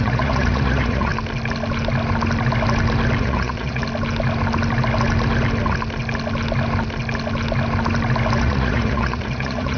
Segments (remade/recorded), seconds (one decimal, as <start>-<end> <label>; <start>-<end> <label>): 0.0-1.1 remade; 1.1-3.2 recorded; 3.2-3.8 remade; 3.8-8.4 recorded; 8.4-9.8 remade